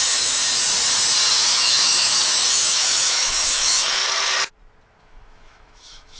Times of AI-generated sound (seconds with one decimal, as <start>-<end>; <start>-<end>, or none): 0.0-0.4; 1.3-4.0; 5.0-6.2